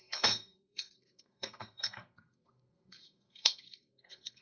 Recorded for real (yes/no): no